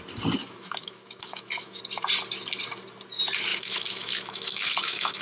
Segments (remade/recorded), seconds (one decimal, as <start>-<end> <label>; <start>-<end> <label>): 0.0-0.4 recorded; 0.4-1.8 remade; 1.8-3.5 recorded; 3.5-5.2 remade

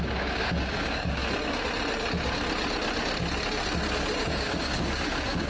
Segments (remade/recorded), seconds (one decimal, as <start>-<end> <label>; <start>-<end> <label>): 0.0-1.2 remade; 1.2-4.3 recorded; 4.3-5.5 remade

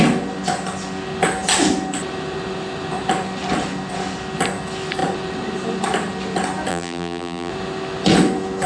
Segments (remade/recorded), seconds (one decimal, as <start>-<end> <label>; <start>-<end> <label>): 0.0-6.7 recorded; 6.7-7.5 remade; 7.5-8.7 recorded

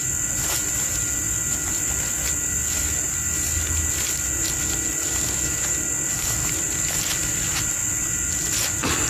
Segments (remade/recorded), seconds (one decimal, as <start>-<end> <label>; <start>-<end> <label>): 0.0-6.4 recorded; 6.4-7.0 remade; 7.0-7.8 recorded; 7.8-9.1 remade